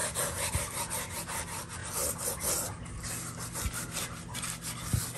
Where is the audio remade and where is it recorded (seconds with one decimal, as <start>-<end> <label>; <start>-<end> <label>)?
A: 0.0-5.2 recorded